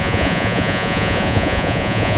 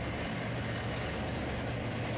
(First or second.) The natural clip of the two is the second